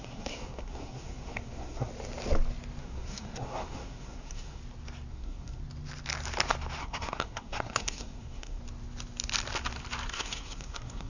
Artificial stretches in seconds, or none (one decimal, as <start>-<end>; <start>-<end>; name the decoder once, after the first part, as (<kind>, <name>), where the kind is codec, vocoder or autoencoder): 0.0-1.9 (codec, SNAC); 2.8-4.6; 5.1-5.6; 6.8-8.6; 10.1-11.1